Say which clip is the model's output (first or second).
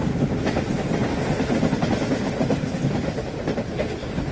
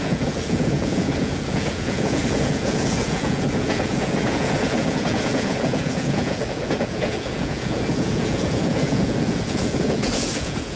second